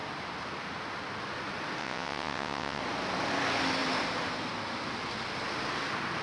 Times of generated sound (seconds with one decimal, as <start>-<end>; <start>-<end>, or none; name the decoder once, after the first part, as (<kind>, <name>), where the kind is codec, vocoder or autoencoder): 1.8-2.8 (vocoder, WaveNeXt)